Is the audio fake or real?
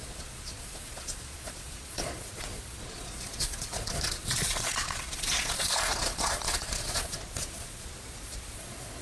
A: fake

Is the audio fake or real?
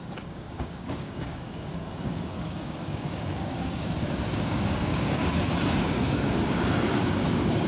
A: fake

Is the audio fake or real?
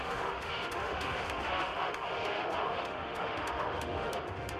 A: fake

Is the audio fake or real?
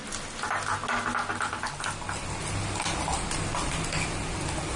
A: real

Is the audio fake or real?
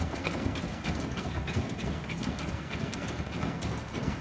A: fake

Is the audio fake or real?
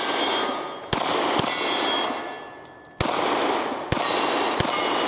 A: real